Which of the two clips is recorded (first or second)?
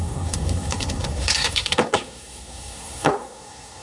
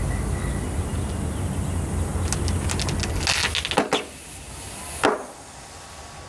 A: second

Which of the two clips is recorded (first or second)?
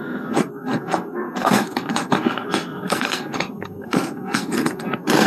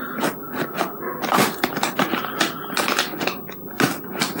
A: second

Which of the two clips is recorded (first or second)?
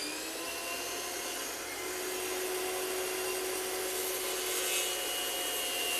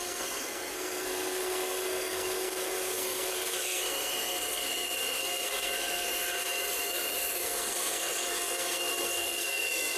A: first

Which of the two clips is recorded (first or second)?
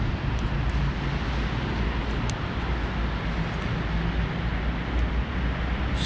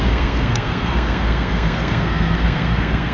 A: first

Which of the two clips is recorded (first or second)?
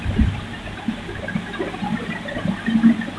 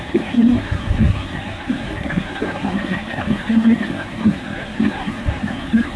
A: first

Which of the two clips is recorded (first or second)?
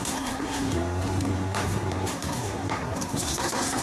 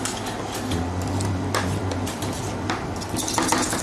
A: second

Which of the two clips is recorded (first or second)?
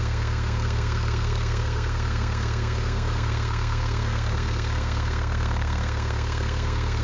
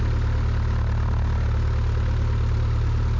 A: second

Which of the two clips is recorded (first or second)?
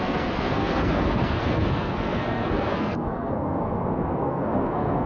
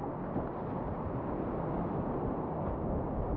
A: second